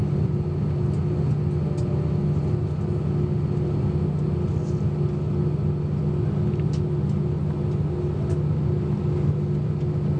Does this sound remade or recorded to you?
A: recorded